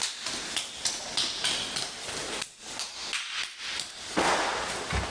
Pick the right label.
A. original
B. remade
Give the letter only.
A